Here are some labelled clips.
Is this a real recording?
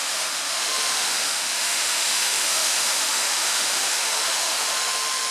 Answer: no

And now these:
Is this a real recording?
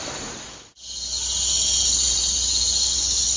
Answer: yes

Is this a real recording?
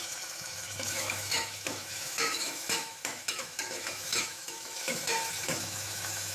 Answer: no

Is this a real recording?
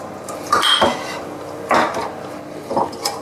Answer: yes